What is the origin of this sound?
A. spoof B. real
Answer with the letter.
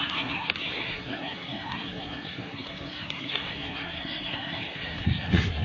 A